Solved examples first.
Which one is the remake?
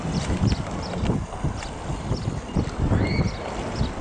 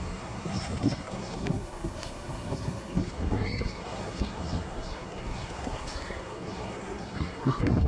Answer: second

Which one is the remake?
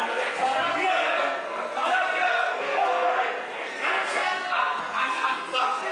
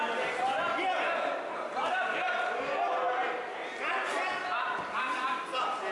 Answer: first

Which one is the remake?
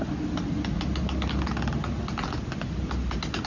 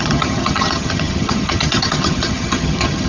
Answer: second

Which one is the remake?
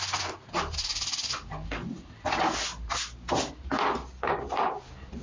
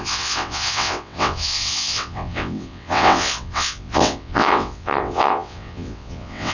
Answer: second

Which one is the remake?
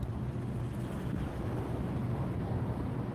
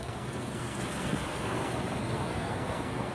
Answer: second